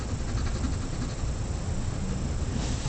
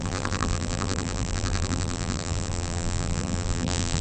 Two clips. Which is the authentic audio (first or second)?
first